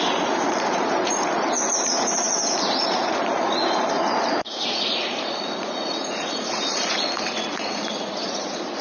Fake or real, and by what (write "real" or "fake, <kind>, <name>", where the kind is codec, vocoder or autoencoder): fake, vocoder, Vocos